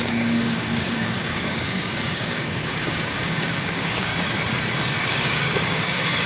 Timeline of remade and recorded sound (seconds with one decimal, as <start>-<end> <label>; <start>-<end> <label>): 0.0-4.1 remade; 4.1-5.0 recorded; 5.0-6.3 remade